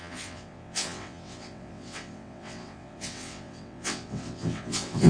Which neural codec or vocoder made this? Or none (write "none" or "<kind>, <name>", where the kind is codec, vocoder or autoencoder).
vocoder, WaveNeXt